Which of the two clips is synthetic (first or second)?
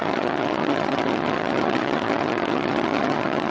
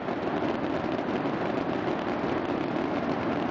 first